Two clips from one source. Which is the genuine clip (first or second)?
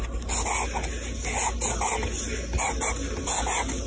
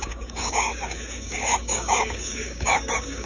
first